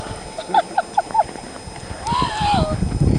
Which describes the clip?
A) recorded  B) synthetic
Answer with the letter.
A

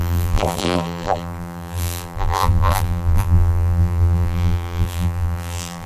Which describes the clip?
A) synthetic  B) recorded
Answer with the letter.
A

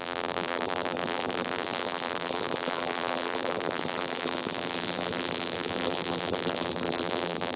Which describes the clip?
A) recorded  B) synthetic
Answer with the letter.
B